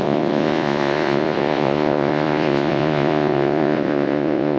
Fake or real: fake